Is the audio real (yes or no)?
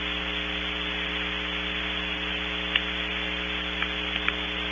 yes